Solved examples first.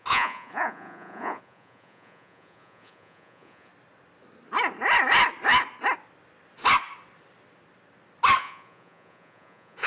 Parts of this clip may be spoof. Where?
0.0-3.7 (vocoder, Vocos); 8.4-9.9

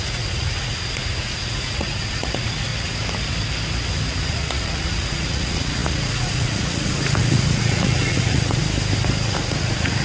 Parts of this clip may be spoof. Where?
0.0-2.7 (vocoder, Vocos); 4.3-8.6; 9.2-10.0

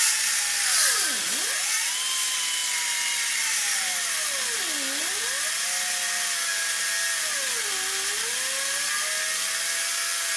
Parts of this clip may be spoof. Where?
none

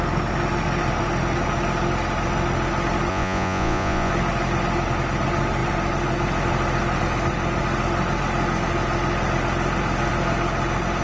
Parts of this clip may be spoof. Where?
3.1-4.1 (vocoder, Vocos)

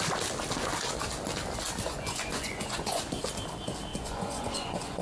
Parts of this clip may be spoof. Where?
1.9-3.0 (vocoder, Vocos); 3.9-5.0

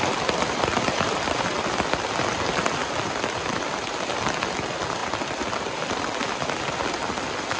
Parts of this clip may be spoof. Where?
none